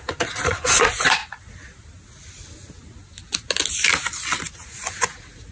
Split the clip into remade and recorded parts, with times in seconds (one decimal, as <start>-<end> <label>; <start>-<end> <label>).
0.0-1.2 remade; 1.2-4.5 recorded; 4.5-5.5 remade